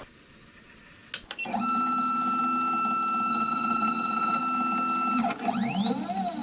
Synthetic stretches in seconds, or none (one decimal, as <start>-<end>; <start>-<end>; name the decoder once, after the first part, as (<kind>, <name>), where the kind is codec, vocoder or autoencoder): 3.3-4.4 (vocoder, WaveNeXt)